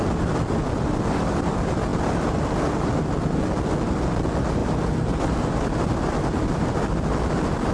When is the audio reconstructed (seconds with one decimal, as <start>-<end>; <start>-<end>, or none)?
none